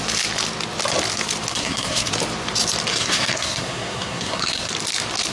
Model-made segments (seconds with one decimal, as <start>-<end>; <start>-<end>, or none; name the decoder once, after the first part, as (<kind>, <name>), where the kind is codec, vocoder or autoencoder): 1.5-2.1 (codec, SNAC); 2.9-4.7